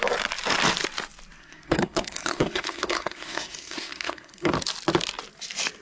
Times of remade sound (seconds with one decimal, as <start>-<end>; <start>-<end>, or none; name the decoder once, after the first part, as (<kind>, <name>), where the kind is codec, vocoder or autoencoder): 1.4-4.5 (codec, SNAC)

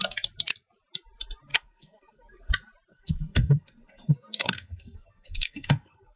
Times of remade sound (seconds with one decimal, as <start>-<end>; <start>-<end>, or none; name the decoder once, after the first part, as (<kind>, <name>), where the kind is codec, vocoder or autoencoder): 1.5-2.5 (codec, SNAC); 2.9-6.2

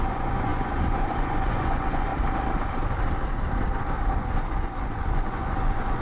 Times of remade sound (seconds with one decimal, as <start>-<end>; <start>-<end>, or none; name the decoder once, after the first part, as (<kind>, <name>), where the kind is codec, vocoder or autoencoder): 0.0-2.1 (vocoder, Vocos); 4.2-6.0